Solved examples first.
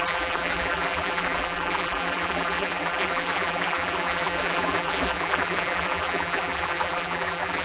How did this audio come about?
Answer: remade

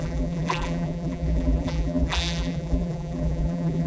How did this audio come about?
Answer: remade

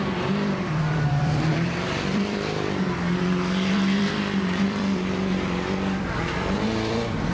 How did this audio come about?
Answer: remade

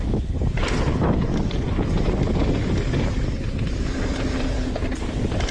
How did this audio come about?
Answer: recorded